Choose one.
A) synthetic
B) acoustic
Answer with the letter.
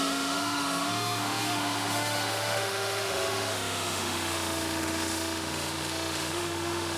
A